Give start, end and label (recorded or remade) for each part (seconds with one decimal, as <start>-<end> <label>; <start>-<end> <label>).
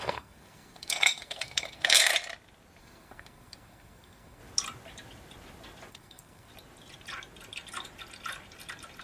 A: 0.0-2.1 remade; 2.1-2.8 recorded; 2.8-4.4 remade; 4.4-5.9 recorded; 5.9-6.5 remade; 6.5-9.0 recorded